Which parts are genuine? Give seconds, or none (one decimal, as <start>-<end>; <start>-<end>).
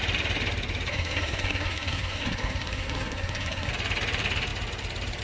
0.0-0.9; 3.7-5.2